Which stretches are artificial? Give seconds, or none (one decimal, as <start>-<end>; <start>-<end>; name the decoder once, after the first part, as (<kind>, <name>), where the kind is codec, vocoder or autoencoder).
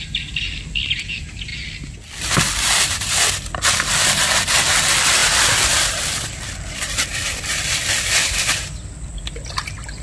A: 0.0-1.5 (vocoder, BigVGAN v2); 2.5-7.1; 9.6-10.0